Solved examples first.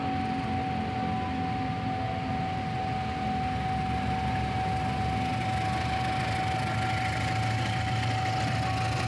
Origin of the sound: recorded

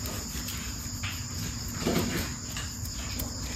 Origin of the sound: recorded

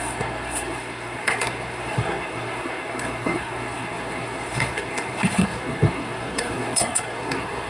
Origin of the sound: remade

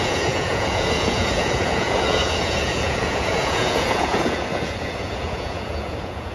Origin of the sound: remade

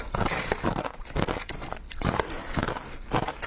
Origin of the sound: recorded